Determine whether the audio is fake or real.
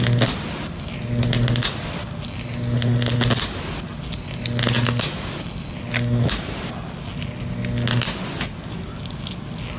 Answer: real